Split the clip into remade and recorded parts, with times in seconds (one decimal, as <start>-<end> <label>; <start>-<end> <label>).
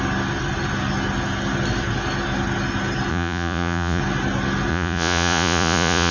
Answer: 0.0-3.1 recorded; 3.1-4.0 remade; 4.0-4.7 recorded; 4.7-6.1 remade